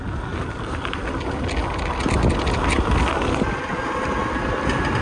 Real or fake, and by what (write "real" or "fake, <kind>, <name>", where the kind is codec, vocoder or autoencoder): real